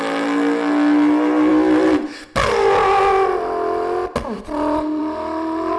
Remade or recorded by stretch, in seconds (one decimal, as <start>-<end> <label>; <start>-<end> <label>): 0.0-5.8 recorded